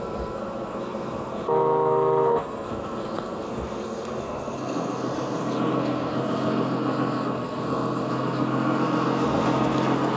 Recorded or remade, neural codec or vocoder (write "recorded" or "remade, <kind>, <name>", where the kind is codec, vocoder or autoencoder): remade, codec, SNAC